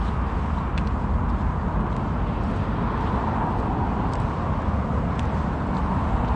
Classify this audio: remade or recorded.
recorded